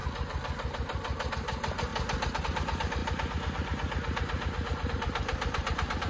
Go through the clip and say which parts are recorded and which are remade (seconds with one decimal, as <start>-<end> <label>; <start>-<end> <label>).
0.0-1.9 remade; 1.9-2.4 recorded; 2.4-3.0 remade; 3.0-4.9 recorded; 4.9-6.1 remade